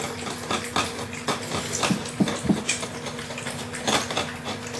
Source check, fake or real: real